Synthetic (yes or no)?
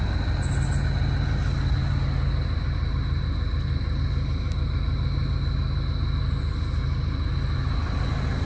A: no